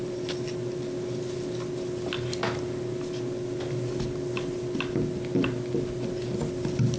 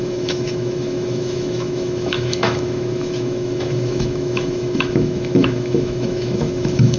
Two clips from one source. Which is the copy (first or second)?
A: second